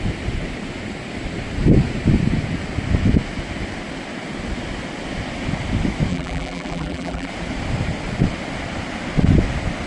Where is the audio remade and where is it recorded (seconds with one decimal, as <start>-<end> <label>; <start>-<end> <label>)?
0.0-6.1 recorded; 6.1-7.3 remade; 7.3-9.9 recorded